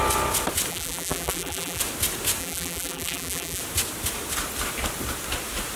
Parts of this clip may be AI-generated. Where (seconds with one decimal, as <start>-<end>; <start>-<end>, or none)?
0.7-1.8; 2.4-3.6